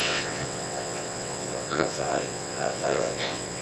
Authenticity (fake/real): fake